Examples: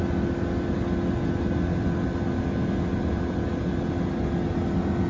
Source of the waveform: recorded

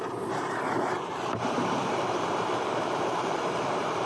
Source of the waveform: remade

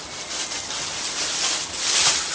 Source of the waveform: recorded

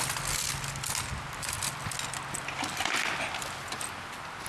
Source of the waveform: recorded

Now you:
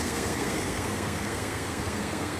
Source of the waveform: remade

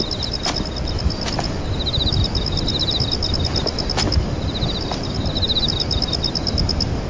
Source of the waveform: recorded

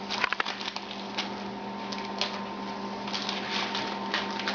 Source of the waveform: recorded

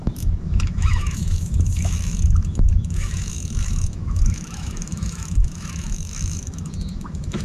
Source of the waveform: remade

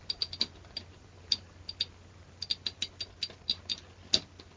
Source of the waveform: recorded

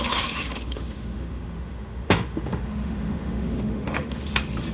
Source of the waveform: remade